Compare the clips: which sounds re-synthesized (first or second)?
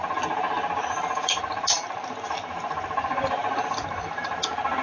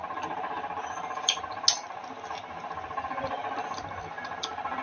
first